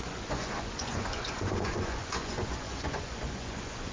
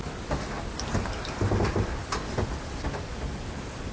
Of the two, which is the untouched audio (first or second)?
second